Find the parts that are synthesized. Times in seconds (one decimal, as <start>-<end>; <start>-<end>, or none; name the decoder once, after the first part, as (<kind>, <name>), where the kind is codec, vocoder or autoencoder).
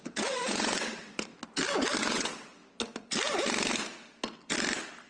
0.0-1.3 (vocoder, WaveNeXt); 2.0-2.6